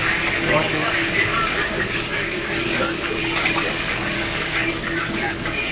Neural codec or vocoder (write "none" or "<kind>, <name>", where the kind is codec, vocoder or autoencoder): codec, DAC